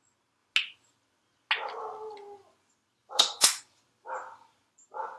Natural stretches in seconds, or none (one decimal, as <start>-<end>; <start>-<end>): 0.0-3.0; 3.8-5.2